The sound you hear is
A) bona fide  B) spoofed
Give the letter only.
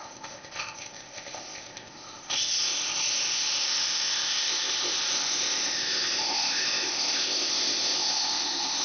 B